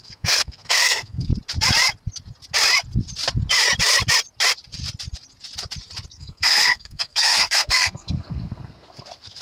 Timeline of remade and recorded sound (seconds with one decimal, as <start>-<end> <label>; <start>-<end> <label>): 0.0-1.3 remade; 1.3-6.1 recorded; 6.1-9.4 remade